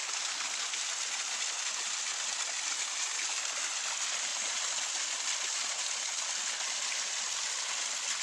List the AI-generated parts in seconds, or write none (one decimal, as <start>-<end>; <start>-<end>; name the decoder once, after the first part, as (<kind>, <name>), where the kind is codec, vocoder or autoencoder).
none